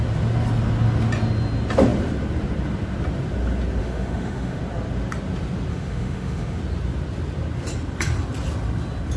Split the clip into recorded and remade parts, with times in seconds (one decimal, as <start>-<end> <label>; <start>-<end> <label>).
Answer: 0.0-3.8 recorded; 3.8-4.6 remade; 4.6-5.7 recorded; 5.7-6.6 remade; 6.6-9.2 recorded

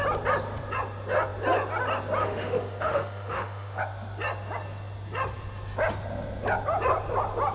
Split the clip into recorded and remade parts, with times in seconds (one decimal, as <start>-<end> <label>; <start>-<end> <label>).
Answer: 0.0-2.2 recorded; 2.2-3.8 remade; 3.8-7.5 recorded